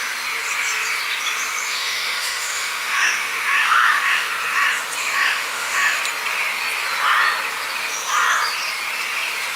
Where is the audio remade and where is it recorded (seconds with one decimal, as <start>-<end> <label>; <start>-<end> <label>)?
0.0-1.6 recorded; 1.6-4.3 remade; 4.3-5.0 recorded; 5.0-6.0 remade; 6.0-9.6 recorded

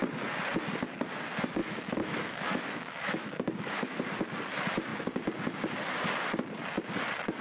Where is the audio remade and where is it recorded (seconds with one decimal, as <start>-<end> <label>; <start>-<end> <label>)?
0.0-1.6 recorded; 1.6-4.0 remade; 4.0-7.4 recorded

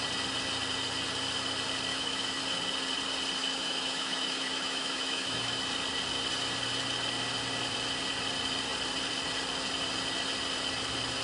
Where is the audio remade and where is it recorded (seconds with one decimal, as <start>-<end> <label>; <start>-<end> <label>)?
0.0-1.9 recorded; 1.9-2.4 remade; 2.4-3.4 recorded; 3.4-5.6 remade; 5.6-11.2 recorded

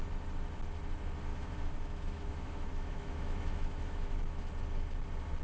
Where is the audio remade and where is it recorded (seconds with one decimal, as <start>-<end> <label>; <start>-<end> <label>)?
0.0-1.3 recorded; 1.3-4.4 remade; 4.4-5.4 recorded

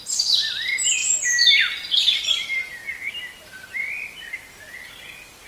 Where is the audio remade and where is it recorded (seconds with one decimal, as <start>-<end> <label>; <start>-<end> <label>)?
0.0-5.5 recorded

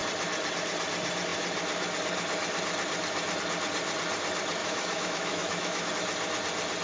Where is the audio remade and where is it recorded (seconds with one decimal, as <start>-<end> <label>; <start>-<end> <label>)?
0.0-4.6 recorded; 4.6-5.9 remade; 5.9-6.8 recorded